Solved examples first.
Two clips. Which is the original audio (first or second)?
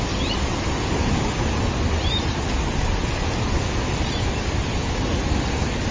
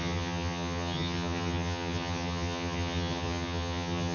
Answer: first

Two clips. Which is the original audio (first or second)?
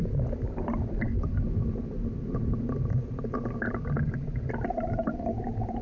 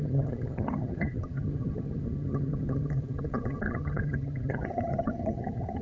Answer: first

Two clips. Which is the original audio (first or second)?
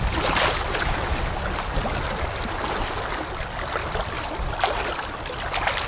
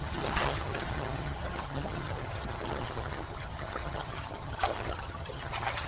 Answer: first